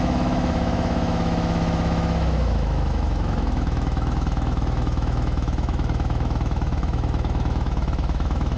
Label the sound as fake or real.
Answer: fake